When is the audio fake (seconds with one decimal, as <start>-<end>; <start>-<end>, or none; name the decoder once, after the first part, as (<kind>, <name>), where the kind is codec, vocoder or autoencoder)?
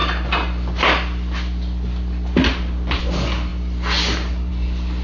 none